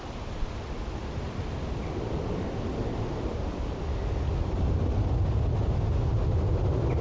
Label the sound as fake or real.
real